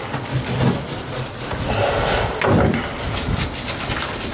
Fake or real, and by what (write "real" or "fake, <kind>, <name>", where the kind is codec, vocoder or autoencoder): real